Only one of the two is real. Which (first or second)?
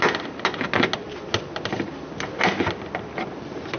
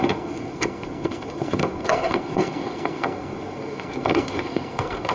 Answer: first